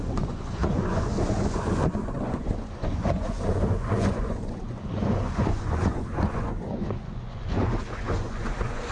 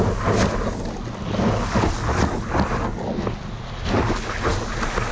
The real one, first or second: second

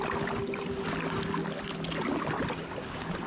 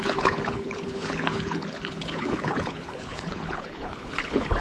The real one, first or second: first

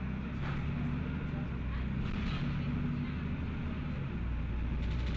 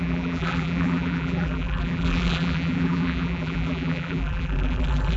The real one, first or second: first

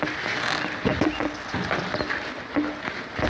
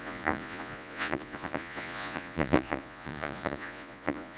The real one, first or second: first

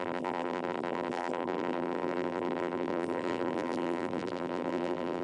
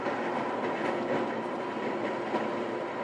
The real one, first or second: second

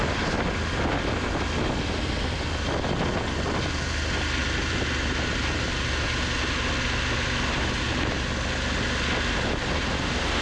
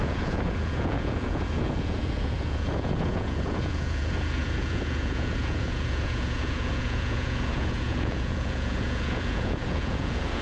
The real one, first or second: first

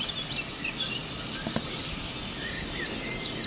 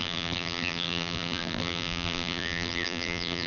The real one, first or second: first